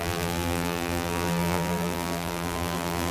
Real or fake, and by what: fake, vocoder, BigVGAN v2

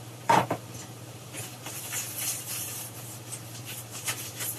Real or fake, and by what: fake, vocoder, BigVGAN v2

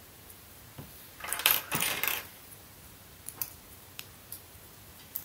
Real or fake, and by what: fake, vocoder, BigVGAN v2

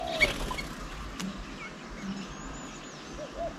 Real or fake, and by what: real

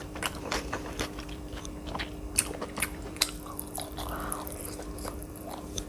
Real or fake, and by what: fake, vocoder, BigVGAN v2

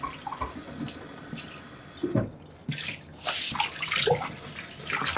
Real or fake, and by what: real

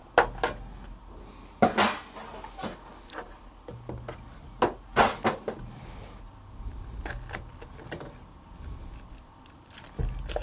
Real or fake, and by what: real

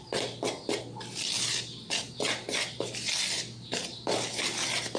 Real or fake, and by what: fake, vocoder, BigVGAN v2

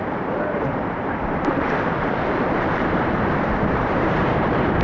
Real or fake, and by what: fake, vocoder, BigVGAN v2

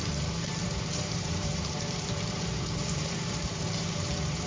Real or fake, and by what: fake, vocoder, BigVGAN v2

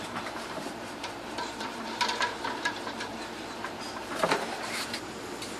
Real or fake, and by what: fake, vocoder, BigVGAN v2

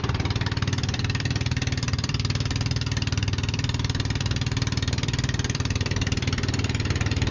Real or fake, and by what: fake, vocoder, BigVGAN v2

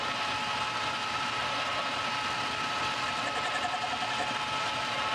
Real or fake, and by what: real